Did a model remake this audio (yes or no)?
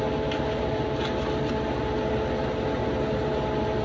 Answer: no